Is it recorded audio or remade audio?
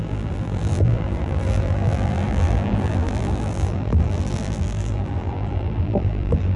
remade